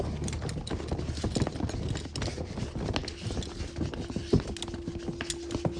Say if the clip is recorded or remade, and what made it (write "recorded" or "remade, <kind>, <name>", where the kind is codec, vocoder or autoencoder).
recorded